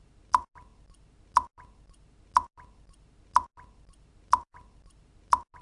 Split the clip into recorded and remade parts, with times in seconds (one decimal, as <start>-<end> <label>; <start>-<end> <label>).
0.0-5.6 recorded

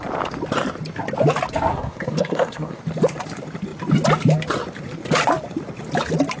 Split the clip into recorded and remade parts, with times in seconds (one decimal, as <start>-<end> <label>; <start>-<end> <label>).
0.0-1.7 recorded; 1.7-2.8 remade; 2.8-6.4 recorded

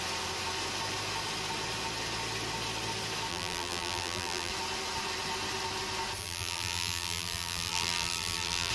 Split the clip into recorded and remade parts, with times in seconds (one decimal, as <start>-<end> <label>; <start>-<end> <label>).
0.0-3.3 recorded; 3.3-4.5 remade; 4.5-6.2 recorded; 6.2-8.7 remade

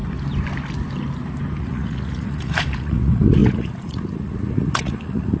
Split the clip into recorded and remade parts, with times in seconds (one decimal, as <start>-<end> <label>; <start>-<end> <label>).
0.0-1.6 recorded; 1.6-5.4 remade

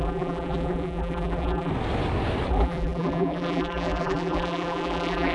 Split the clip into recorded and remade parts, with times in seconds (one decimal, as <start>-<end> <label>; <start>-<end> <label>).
0.0-1.7 remade; 1.7-2.5 recorded; 2.5-5.3 remade

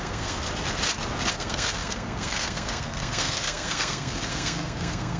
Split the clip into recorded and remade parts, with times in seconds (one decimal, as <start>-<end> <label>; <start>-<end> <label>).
0.0-0.4 remade; 0.4-1.3 recorded; 1.3-5.2 remade

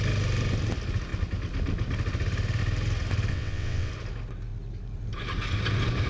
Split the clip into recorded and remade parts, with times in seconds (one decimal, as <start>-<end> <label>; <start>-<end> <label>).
0.0-3.3 recorded; 3.3-3.9 remade; 3.9-6.1 recorded

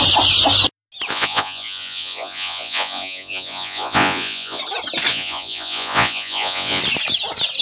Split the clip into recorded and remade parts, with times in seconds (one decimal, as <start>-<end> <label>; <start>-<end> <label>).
0.0-1.1 recorded; 1.1-4.6 remade; 4.6-5.1 recorded; 5.1-6.8 remade; 6.8-7.6 recorded